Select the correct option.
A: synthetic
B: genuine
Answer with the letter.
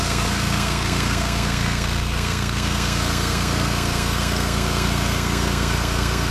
A